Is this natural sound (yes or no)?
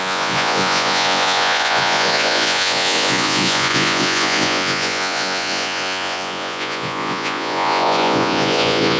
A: no